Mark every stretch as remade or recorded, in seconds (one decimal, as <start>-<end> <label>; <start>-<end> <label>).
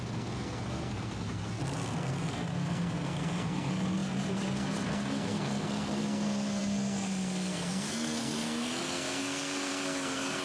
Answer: 0.0-10.4 remade